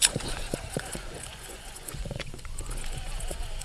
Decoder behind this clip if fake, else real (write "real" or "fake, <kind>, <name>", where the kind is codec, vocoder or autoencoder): fake, vocoder, Vocos